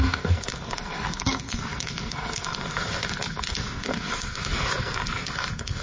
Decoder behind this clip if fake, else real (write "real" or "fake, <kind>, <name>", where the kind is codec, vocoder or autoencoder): fake, codec, SNAC